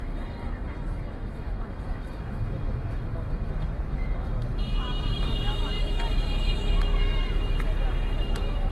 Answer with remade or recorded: remade